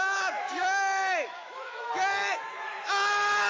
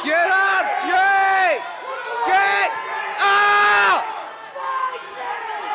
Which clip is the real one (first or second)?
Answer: second